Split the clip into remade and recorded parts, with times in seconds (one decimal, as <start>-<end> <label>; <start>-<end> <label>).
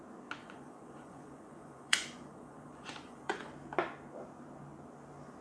0.0-0.4 recorded; 0.4-3.5 remade; 3.5-5.4 recorded